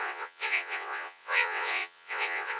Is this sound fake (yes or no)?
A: yes